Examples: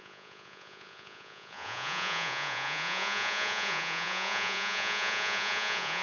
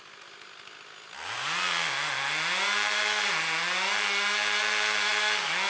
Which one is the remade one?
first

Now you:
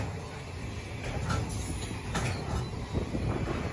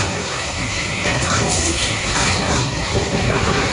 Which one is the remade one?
second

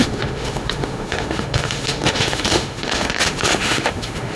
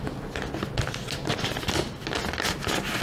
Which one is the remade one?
first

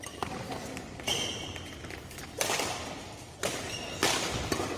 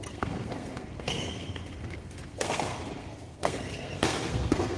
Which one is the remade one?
second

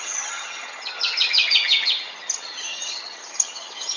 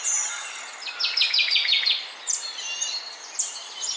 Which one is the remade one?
first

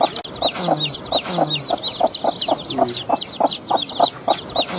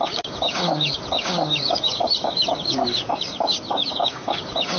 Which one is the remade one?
second